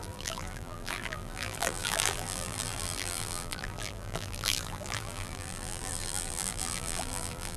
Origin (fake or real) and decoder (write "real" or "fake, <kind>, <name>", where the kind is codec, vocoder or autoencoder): fake, vocoder, BigVGAN v2